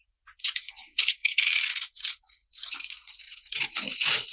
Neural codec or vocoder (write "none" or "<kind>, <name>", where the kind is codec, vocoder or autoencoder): vocoder, Vocos